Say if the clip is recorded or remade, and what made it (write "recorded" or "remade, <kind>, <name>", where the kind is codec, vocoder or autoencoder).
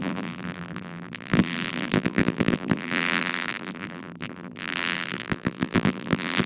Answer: remade, vocoder, BigVGAN v2